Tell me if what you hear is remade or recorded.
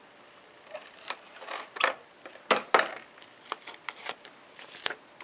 recorded